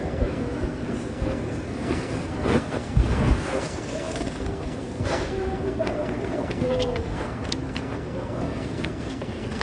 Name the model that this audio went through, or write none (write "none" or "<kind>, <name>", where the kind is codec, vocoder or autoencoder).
codec, SNAC